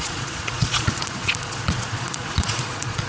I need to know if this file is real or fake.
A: fake